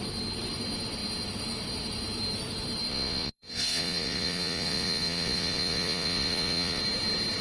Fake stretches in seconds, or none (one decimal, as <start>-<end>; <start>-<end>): 2.9-6.8

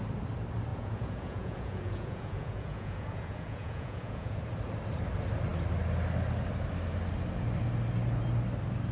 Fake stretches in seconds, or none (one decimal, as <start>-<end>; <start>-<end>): 0.7-4.4

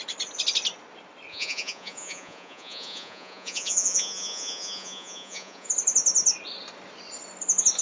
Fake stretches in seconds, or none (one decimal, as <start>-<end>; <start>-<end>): 1.3-5.7

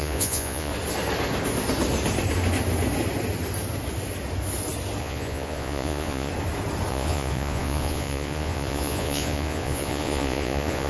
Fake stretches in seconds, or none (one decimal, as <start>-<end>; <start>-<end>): 0.0-0.7; 5.0-6.3; 6.9-10.9